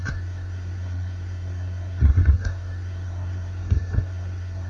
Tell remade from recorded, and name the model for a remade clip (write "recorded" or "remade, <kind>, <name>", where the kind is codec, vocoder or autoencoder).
remade, codec, SNAC